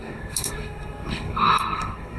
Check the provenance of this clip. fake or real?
fake